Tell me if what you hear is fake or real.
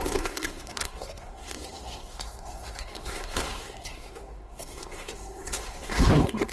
fake